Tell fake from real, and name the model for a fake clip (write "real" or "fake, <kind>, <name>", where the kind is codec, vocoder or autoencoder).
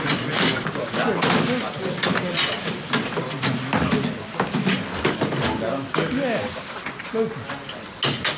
real